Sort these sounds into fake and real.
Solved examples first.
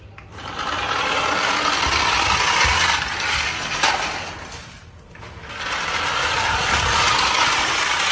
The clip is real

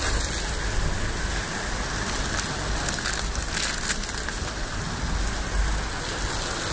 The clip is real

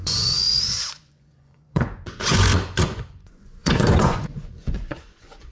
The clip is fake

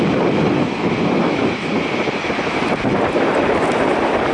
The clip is real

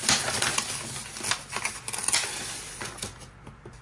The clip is real